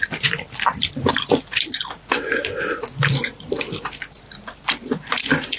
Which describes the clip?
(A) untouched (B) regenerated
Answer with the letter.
B